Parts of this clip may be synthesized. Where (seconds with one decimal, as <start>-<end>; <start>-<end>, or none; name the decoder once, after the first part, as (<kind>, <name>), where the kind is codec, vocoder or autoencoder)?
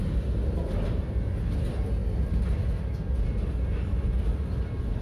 none